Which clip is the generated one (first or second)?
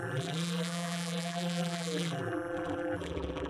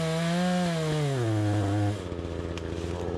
first